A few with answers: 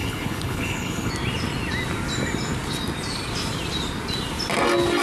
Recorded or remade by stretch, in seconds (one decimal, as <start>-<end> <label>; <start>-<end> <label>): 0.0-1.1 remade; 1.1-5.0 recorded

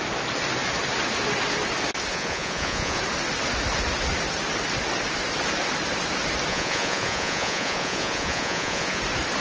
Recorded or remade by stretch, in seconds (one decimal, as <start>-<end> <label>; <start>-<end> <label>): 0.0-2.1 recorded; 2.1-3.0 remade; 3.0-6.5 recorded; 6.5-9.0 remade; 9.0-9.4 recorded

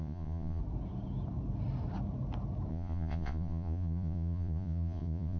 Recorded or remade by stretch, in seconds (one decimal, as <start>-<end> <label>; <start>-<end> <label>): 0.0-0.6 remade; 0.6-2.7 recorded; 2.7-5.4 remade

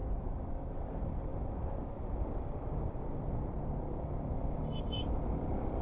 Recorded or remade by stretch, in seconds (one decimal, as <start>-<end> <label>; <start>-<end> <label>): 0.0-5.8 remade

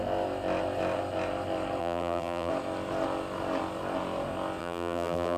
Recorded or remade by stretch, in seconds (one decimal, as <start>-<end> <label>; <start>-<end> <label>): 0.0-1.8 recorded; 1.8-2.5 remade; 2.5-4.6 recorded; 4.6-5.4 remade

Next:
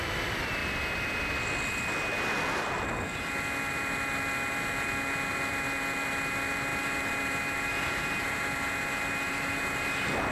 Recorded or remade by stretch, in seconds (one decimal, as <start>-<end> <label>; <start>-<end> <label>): 0.0-10.3 recorded

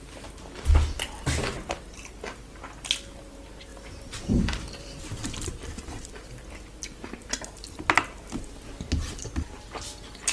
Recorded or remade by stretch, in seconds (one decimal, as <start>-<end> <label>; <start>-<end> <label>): 0.0-3.7 recorded; 3.7-5.8 remade; 5.8-10.3 recorded

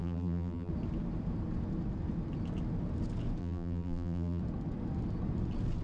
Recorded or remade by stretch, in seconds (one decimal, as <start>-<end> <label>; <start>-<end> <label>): 0.0-0.7 remade; 0.7-3.4 recorded; 3.4-4.4 remade; 4.4-5.8 recorded